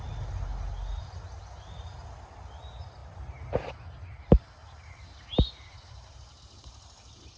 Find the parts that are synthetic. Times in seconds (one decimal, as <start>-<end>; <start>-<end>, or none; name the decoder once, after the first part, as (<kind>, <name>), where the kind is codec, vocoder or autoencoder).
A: none